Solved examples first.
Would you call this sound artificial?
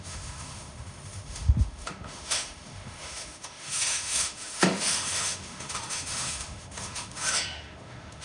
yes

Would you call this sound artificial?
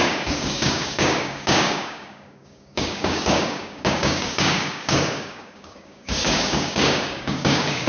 yes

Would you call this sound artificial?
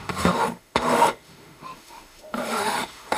yes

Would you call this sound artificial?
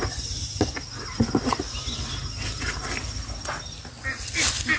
no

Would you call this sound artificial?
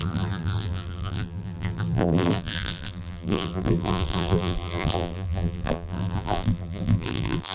yes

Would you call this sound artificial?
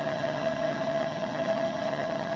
yes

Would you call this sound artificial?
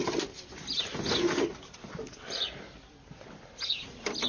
no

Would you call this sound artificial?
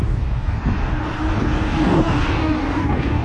yes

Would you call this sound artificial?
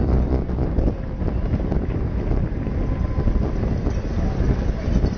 no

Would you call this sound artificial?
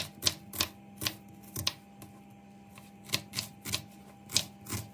no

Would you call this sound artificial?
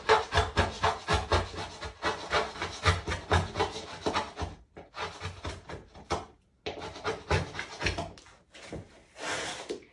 no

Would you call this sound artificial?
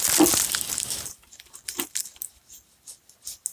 no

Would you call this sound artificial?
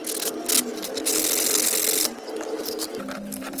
no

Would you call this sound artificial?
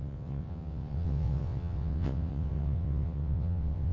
yes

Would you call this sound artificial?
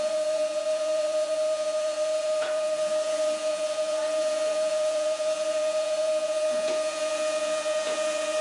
yes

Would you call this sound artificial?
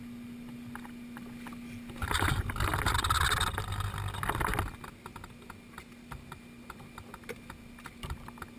no